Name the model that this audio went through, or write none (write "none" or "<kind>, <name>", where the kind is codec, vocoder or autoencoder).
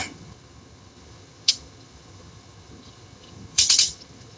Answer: vocoder, HiFi-GAN